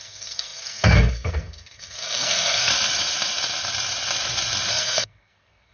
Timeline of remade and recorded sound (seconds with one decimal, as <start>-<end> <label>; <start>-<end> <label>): 0.0-2.7 remade; 2.7-4.7 recorded; 4.7-5.7 remade